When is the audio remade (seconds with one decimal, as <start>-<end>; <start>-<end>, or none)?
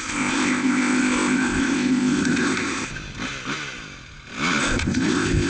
0.0-2.9; 4.6-5.5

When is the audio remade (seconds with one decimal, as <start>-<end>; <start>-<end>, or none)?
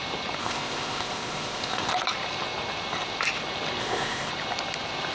0.4-1.9; 3.8-4.3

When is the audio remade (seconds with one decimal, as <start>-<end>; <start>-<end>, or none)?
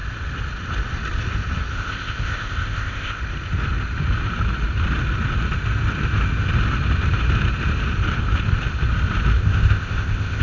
1.7-3.2; 9.4-10.4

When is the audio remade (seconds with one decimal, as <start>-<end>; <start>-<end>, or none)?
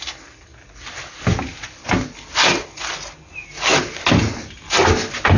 none